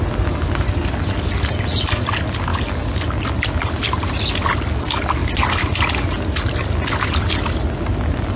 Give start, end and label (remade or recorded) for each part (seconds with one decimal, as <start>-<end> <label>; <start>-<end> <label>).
0.0-8.4 recorded